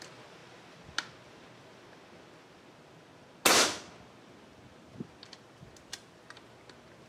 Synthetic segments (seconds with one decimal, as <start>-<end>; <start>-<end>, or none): none